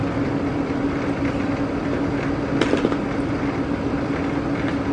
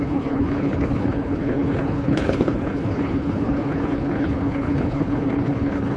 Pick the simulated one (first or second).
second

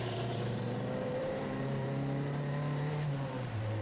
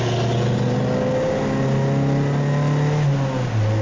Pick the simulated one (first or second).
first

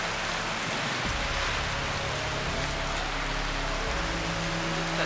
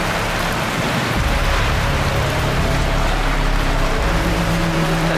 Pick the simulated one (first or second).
second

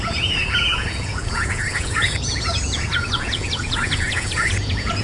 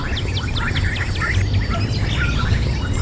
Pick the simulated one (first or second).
first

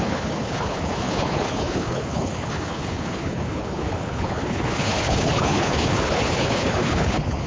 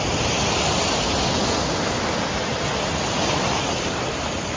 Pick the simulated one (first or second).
first